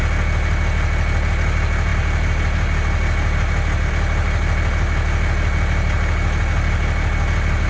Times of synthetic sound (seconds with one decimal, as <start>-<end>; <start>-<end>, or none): 1.9-3.9